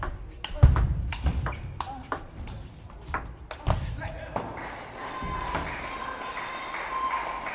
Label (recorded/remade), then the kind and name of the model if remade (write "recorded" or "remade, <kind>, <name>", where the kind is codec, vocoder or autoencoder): recorded